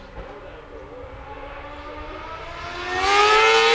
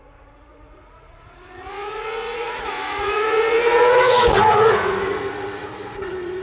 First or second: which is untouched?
first